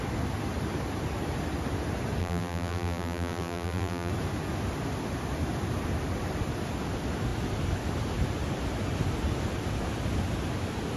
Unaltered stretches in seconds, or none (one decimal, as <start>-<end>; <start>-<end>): 0.0-2.2; 4.1-11.0